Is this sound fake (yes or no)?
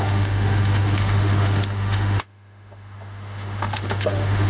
yes